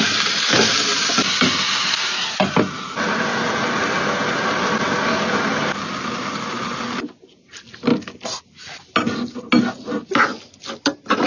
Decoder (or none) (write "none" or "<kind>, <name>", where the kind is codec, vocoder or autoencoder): none